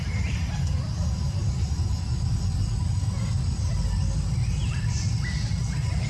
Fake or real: real